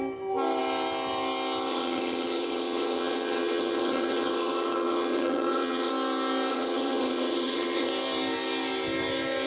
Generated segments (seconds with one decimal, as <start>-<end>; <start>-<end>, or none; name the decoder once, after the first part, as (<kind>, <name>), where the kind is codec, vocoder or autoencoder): 1.7-5.9 (vocoder, HiFi-GAN); 6.5-7.9